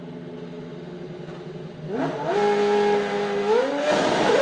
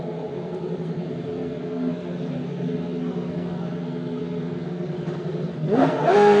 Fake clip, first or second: second